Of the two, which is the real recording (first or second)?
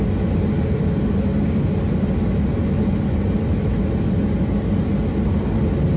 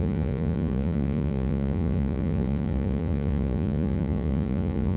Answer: first